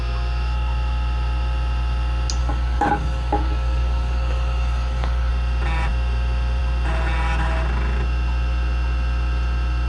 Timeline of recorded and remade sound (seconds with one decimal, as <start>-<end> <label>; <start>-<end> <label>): 0.0-2.4 recorded; 2.4-5.3 remade; 5.3-9.9 recorded